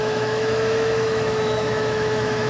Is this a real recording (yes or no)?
no